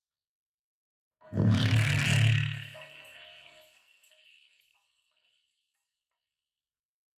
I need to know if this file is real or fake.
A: fake